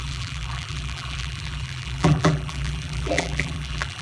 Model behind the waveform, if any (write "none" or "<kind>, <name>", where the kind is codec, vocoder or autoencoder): vocoder, BigVGAN v2